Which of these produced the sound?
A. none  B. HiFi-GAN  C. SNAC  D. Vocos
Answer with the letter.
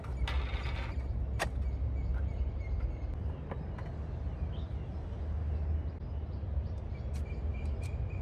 A